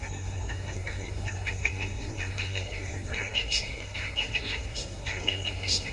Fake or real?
fake